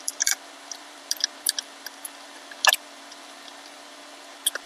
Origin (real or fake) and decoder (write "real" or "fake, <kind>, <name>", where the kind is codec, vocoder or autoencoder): fake, vocoder, BigVGAN v2